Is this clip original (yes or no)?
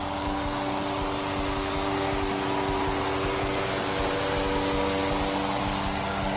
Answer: yes